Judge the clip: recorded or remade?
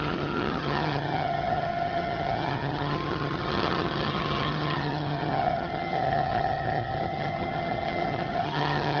remade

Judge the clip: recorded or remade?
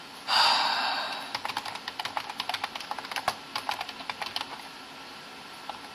recorded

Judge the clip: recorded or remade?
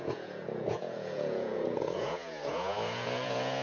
remade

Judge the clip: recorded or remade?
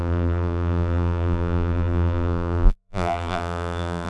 remade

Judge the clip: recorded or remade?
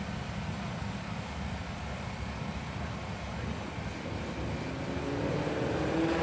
recorded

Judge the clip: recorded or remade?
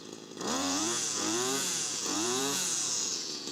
remade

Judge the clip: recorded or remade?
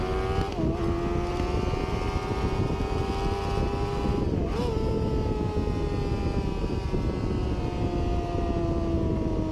recorded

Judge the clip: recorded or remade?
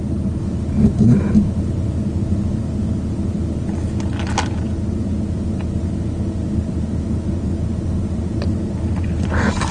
recorded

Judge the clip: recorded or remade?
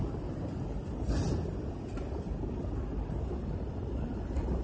recorded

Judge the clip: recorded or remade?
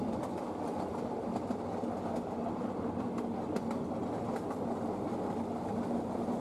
recorded